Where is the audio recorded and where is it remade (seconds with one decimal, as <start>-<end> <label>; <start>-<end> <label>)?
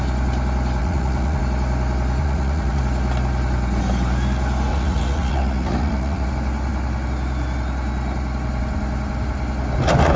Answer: 0.0-0.8 recorded; 0.8-1.4 remade; 1.4-2.2 recorded; 2.2-2.8 remade; 2.8-4.7 recorded; 4.7-6.3 remade; 6.3-10.2 recorded